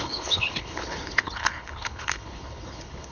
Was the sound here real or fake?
fake